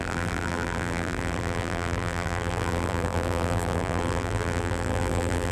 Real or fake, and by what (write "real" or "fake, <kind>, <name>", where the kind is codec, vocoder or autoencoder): fake, vocoder, BigVGAN v2